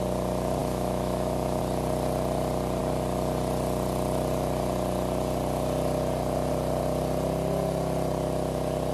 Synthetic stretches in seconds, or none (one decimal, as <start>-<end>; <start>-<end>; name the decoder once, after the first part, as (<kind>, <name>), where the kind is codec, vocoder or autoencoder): 0.6-1.6 (autoencoder, DAC-VAE)